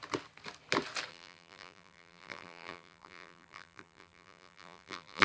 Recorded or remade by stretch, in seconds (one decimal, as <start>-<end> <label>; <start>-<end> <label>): 0.0-1.1 recorded; 1.1-5.2 remade

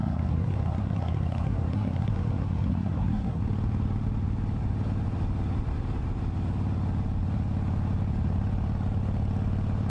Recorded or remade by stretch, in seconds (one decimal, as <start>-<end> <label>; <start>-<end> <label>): 0.0-3.4 remade; 3.4-9.9 recorded

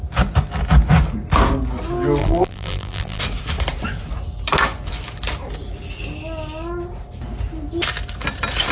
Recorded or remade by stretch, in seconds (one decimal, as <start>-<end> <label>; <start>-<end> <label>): 0.0-2.2 recorded; 2.2-3.2 remade; 3.2-8.7 recorded

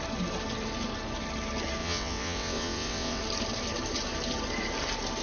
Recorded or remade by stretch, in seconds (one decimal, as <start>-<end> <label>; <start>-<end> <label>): 0.0-1.8 recorded; 1.8-3.2 remade; 3.2-5.2 recorded

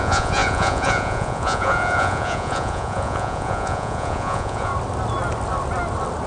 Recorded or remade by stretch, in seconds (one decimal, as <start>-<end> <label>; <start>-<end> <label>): 0.0-4.7 remade; 4.7-6.3 recorded

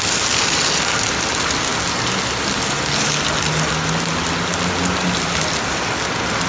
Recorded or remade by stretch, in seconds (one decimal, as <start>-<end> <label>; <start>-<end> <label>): 0.0-6.5 recorded

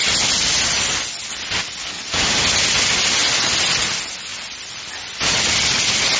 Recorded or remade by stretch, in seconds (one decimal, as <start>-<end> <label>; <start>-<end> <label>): 0.0-4.3 recorded; 4.3-4.9 remade; 4.9-6.2 recorded

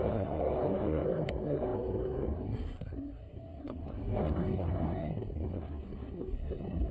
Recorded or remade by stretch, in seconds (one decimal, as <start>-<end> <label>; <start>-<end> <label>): 0.0-6.9 remade